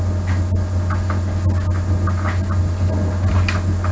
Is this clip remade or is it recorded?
recorded